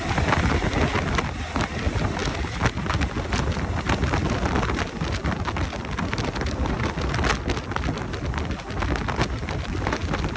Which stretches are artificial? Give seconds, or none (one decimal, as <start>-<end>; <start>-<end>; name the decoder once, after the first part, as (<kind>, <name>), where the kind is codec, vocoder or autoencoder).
none